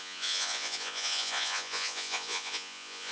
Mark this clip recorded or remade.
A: remade